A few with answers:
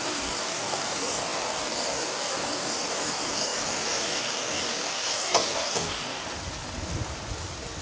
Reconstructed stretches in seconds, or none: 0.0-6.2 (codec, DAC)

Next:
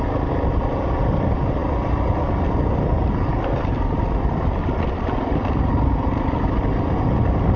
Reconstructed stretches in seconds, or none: none

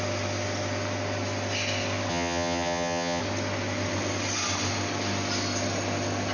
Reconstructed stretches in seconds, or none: 2.1-3.2 (vocoder, HiFi-GAN)

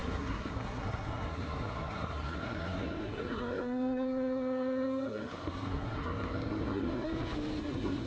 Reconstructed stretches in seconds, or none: 0.0-7.1 (codec, SNAC); 7.6-8.1

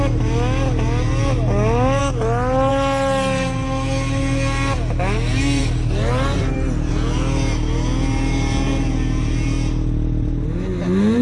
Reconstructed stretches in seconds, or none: 5.6-6.9 (vocoder, BigVGAN v2)

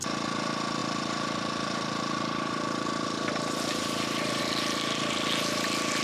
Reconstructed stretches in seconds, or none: 0.8-4.4 (vocoder, BigVGAN v2)